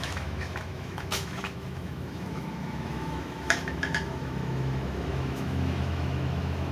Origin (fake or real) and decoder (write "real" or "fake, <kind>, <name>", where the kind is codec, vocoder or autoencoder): fake, autoencoder, DAC-VAE